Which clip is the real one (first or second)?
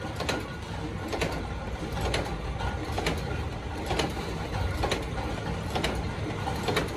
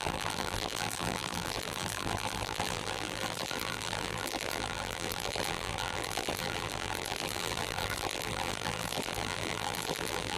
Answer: first